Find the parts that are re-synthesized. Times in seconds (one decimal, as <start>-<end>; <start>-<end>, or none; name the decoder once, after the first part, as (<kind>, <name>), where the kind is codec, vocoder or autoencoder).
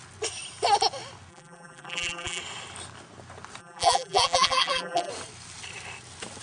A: 1.3-2.4 (vocoder, BigVGAN v2); 3.6-5.1